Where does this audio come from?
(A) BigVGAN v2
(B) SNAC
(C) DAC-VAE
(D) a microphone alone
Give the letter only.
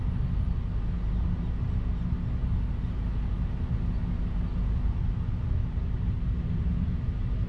D